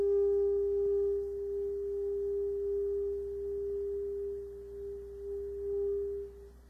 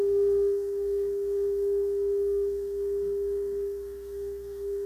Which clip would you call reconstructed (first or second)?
second